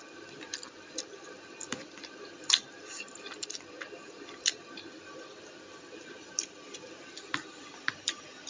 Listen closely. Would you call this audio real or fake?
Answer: real